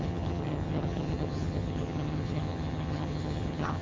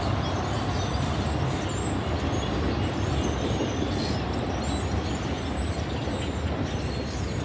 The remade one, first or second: first